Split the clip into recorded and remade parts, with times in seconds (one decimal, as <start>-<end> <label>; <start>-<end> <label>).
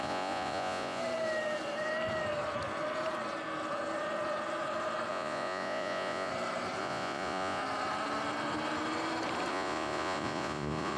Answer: 0.0-1.0 remade; 1.0-5.1 recorded; 5.1-6.3 remade; 6.3-6.8 recorded; 6.8-7.6 remade; 7.6-9.5 recorded; 9.5-11.0 remade